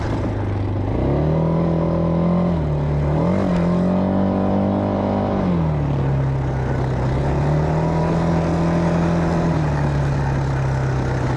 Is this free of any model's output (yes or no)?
yes